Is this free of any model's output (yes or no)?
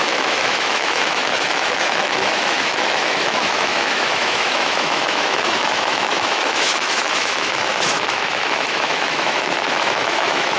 no